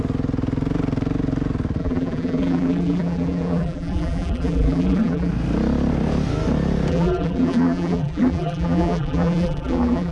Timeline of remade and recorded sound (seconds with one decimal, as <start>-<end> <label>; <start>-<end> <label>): 0.0-1.8 recorded; 1.8-5.3 remade; 5.3-6.9 recorded; 6.9-10.1 remade